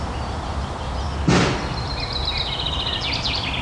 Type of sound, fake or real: real